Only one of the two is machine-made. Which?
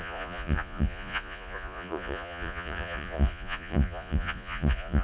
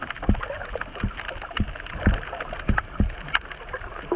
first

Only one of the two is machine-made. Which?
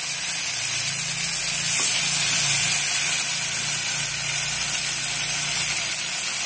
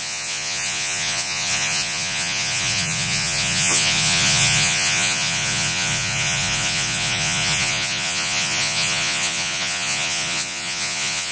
second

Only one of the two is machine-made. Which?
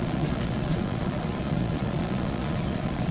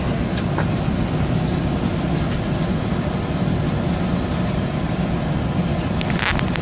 first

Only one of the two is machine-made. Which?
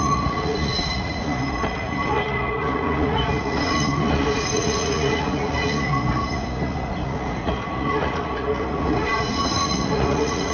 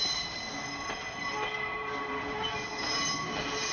first